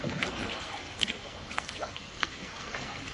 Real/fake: fake